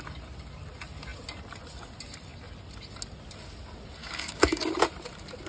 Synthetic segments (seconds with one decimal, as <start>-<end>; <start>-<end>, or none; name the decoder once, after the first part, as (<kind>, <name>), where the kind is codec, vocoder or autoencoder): 4.0-4.7 (codec, DAC)